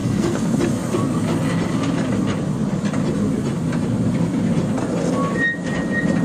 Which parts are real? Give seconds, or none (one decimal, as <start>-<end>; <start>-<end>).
0.6-6.2